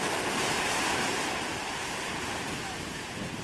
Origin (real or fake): real